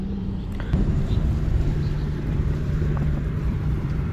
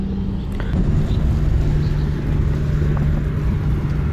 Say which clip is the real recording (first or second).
second